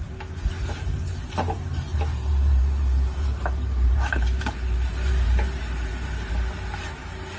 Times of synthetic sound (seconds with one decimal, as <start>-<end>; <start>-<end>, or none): 1.9-6.3